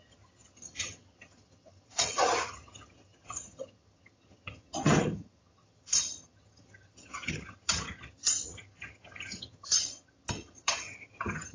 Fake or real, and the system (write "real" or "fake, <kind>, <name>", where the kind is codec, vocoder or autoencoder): fake, vocoder, HiFi-GAN